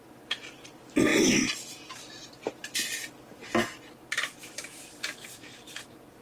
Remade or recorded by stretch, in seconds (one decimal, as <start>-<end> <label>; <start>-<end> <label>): 0.0-6.2 recorded